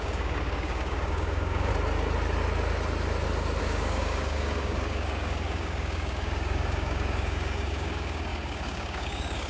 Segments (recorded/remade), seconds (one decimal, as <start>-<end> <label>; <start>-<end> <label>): 0.0-1.7 remade; 1.7-3.6 recorded; 3.6-9.5 remade